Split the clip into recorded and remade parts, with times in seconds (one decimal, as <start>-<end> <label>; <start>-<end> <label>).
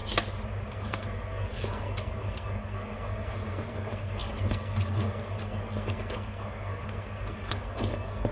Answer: 0.0-0.7 recorded; 0.7-8.3 remade